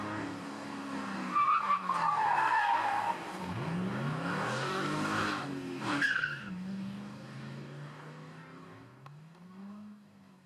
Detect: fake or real fake